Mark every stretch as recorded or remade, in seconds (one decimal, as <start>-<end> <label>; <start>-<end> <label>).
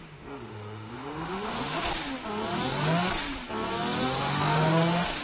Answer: 0.0-1.9 remade; 1.9-4.2 recorded; 4.2-5.2 remade